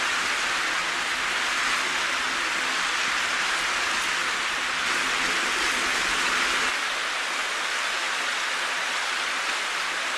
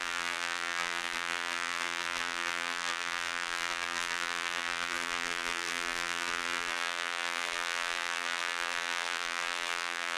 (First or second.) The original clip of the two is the first